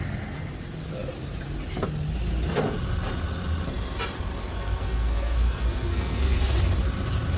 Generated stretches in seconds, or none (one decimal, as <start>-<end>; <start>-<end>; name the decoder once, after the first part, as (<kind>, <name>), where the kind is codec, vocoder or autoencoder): 4.4-6.4 (codec, SNAC)